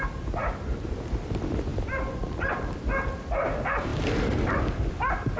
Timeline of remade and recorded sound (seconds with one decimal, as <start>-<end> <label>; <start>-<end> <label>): 0.0-5.4 recorded